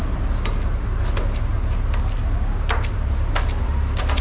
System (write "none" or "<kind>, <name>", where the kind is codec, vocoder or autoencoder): none